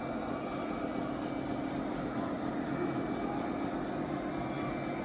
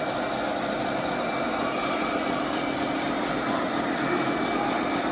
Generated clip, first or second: second